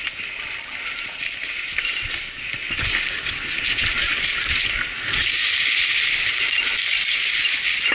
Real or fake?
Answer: real